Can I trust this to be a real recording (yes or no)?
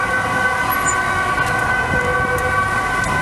yes